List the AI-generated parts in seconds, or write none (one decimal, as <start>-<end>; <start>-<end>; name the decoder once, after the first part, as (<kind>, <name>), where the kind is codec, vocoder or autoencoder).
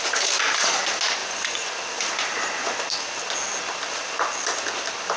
1.2-1.7 (vocoder, Vocos)